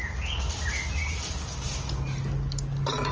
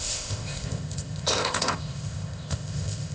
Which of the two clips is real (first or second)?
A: first